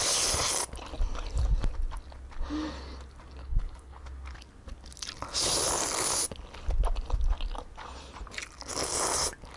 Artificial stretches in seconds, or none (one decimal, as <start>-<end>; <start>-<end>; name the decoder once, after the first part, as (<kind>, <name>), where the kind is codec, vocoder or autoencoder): 3.4-4.0 (codec, HILCodec)